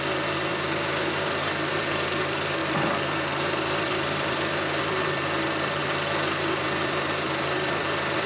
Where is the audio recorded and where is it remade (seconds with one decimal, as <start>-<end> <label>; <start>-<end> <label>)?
0.0-5.8 remade; 5.8-6.6 recorded; 6.6-8.3 remade